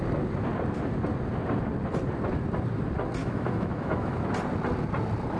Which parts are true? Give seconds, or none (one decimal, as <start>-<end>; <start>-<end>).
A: 0.0-3.2; 4.2-5.4